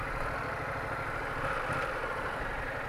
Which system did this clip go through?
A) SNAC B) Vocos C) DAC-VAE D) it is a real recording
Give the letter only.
D